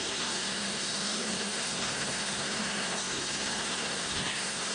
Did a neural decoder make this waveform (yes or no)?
yes